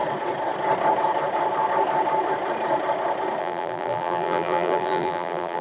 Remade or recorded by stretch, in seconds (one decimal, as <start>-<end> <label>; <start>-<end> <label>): 0.0-3.4 recorded; 3.4-5.6 remade